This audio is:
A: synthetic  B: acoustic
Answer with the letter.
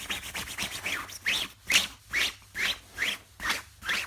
B